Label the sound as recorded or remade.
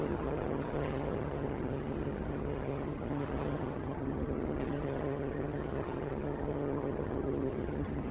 remade